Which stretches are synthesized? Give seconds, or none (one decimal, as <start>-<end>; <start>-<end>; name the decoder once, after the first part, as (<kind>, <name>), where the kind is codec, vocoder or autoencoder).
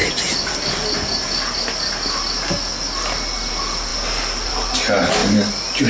none